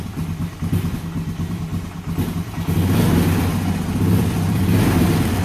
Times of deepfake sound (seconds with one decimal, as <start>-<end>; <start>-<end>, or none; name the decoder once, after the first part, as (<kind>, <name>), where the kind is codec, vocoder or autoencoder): 0.0-1.7 (vocoder, BigVGAN v2); 4.0-5.4